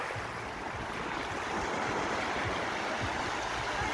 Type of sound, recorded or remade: recorded